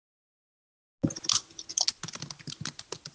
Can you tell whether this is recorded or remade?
recorded